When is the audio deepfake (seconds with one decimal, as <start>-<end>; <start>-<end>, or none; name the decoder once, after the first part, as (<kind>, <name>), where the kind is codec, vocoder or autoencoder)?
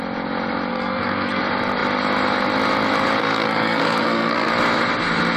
0.7-1.4 (codec, SNAC); 3.2-4.5